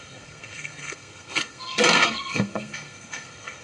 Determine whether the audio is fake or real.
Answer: fake